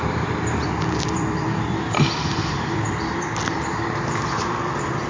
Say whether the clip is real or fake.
fake